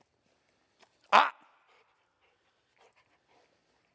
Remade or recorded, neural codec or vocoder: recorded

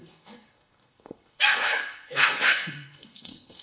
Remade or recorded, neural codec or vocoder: remade, codec, SNAC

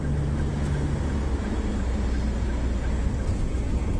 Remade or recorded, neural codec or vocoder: recorded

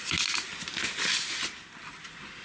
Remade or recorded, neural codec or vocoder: recorded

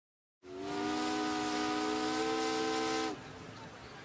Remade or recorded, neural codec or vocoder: recorded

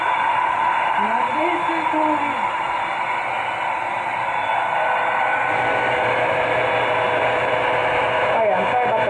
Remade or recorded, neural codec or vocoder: recorded